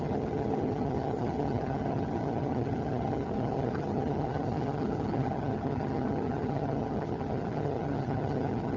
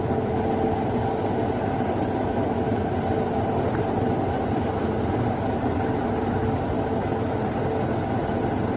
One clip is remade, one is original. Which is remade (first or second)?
first